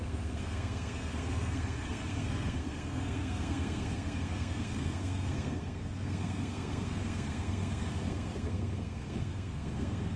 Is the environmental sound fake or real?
fake